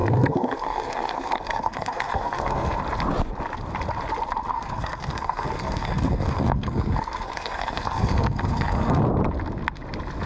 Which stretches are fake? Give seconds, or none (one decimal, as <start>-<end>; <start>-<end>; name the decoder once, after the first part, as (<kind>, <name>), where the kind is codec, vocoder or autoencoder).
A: 0.0-2.8 (codec, SNAC); 4.5-9.0